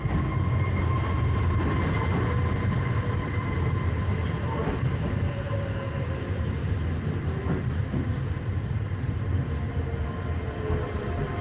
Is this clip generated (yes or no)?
no